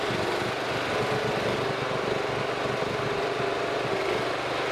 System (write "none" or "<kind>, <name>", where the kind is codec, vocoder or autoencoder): none